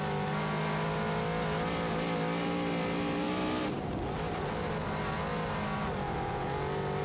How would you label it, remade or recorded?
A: recorded